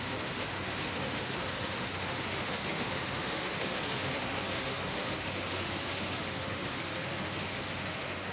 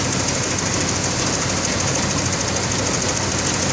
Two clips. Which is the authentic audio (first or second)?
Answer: second